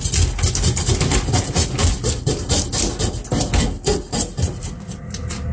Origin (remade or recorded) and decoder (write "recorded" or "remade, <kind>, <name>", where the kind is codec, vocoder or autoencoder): recorded